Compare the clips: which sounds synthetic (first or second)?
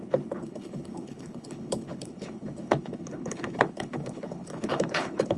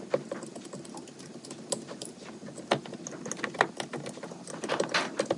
first